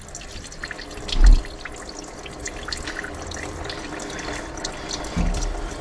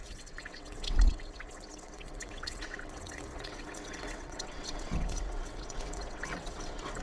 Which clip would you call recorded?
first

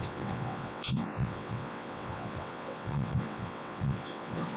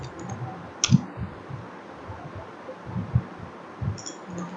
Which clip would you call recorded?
second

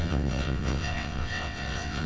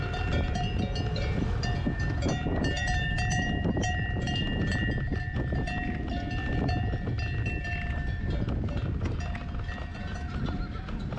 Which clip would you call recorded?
second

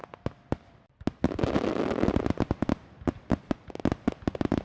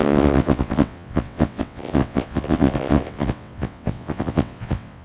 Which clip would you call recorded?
first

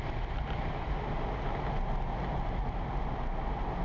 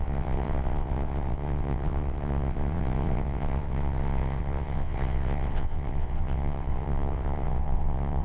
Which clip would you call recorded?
first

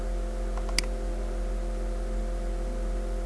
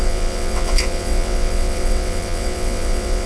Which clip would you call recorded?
first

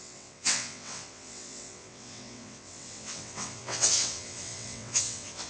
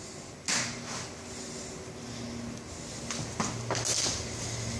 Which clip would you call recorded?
second